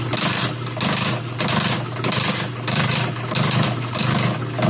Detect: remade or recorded recorded